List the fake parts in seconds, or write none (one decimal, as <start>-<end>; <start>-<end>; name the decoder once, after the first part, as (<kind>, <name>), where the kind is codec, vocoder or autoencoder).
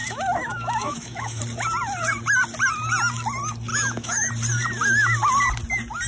0.0-1.4 (autoencoder, DAC-VAE); 3.7-4.3